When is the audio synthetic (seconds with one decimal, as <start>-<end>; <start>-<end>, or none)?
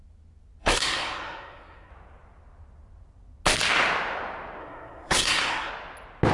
0.6-1.9; 4.6-5.7